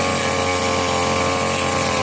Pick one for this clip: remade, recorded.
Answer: recorded